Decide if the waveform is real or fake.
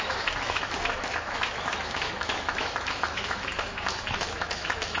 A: fake